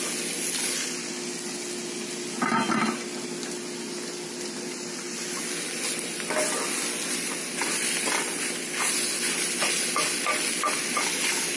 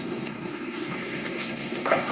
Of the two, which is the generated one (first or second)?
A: second